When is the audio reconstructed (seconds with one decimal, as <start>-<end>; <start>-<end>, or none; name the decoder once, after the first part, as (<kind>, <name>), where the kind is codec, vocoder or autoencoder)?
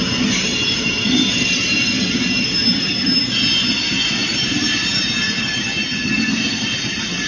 0.5-1.9 (vocoder, BigVGAN v2); 4.2-5.6